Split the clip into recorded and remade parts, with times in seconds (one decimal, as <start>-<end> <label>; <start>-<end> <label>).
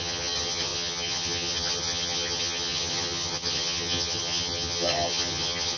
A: 0.0-5.8 remade